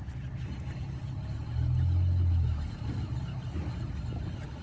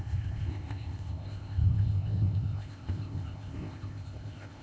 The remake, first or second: second